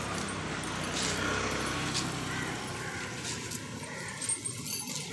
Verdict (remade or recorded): recorded